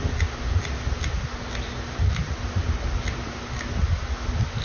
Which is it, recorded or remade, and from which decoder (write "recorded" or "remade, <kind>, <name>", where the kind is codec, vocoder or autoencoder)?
recorded